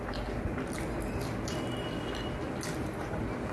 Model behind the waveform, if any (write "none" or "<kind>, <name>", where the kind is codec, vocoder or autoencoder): none